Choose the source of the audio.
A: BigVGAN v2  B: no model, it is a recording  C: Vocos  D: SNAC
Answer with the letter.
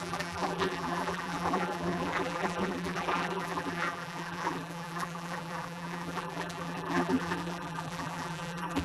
A